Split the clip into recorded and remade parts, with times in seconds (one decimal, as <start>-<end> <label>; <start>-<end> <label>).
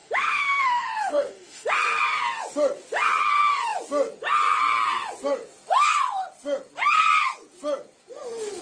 0.0-1.7 remade; 1.7-8.6 recorded